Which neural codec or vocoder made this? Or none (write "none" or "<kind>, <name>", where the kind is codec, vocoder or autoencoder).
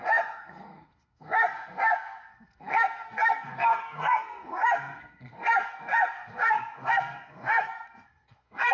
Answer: codec, SNAC